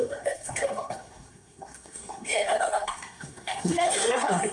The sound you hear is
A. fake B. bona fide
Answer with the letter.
A